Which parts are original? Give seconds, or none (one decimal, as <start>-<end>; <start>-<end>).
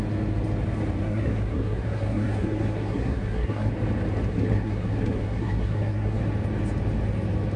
0.0-1.0; 3.7-4.3; 6.2-7.6